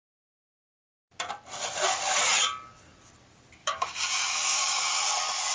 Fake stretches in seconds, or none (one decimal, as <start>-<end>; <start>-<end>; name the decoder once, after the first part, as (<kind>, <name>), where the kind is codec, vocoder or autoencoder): 3.6-5.0 (codec, DAC)